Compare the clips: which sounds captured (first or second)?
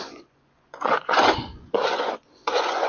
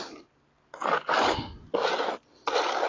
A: second